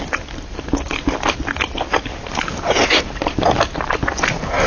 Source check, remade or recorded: recorded